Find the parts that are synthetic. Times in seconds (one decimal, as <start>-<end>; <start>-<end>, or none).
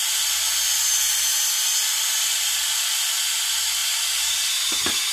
0.0-3.1; 3.8-4.5